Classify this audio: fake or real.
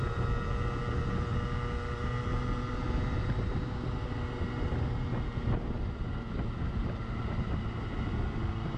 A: real